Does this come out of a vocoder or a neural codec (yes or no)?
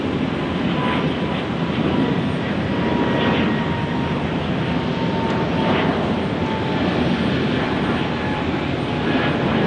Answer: no